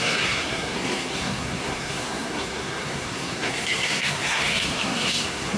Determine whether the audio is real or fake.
fake